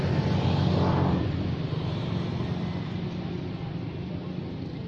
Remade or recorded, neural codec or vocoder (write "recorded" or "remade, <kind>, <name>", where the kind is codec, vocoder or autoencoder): remade, vocoder, BigVGAN v2